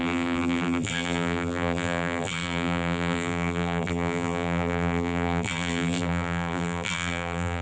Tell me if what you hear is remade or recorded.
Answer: remade